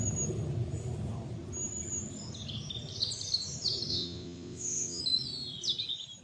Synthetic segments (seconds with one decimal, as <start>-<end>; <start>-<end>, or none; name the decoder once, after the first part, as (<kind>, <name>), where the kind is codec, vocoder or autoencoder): 3.9-5.0 (vocoder, WaveNeXt)

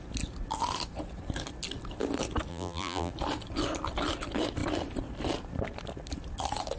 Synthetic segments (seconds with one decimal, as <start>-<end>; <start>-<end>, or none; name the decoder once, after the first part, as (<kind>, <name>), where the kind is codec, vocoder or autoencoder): 2.5-3.1 (vocoder, BigVGAN v2)

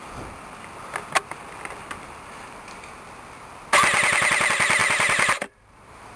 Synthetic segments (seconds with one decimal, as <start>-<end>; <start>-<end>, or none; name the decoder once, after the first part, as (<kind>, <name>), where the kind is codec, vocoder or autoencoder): 4.8-6.2 (vocoder, BigVGAN v2)

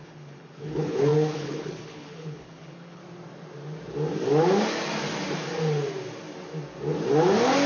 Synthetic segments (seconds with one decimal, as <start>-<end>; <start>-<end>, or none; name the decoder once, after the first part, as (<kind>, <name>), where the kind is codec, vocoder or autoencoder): 0.0-3.0 (codec, HILCodec)

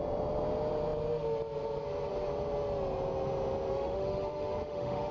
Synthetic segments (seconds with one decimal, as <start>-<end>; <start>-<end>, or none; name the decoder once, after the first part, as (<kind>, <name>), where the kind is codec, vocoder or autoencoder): 3.7-5.1 (autoencoder, DAC-VAE)

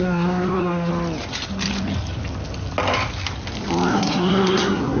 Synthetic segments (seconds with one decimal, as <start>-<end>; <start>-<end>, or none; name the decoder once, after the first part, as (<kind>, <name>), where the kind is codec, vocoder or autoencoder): 0.0-0.9 (codec, SNAC); 3.9-5.0

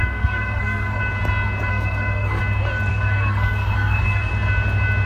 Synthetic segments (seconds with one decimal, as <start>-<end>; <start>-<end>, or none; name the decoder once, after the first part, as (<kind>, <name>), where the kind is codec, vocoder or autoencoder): 0.0-1.0 (codec, SNAC); 1.7-2.4; 2.9-4.3

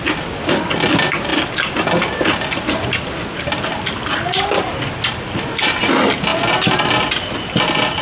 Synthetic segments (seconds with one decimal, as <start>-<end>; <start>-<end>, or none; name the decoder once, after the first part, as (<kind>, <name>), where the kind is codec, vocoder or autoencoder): none